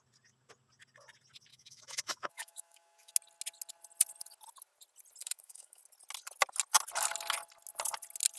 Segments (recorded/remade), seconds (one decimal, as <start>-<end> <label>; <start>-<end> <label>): 0.0-1.5 recorded; 1.5-3.1 remade; 3.1-5.2 recorded; 5.2-5.8 remade; 5.8-8.4 recorded